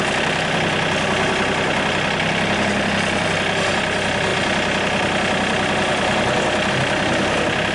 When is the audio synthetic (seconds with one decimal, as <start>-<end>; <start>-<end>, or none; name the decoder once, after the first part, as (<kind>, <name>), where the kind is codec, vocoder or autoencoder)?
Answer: none